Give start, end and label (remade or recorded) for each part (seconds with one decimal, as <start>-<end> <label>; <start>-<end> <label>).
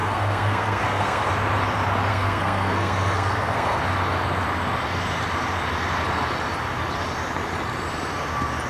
0.0-1.3 remade; 1.3-2.1 recorded; 2.1-3.8 remade; 3.8-8.7 recorded